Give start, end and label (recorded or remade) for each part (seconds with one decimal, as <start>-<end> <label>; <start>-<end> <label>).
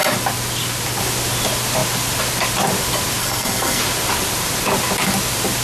0.0-3.2 recorded; 3.2-3.8 remade; 3.8-5.6 recorded